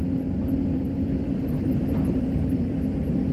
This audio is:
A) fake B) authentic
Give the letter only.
B